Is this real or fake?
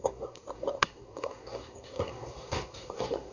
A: fake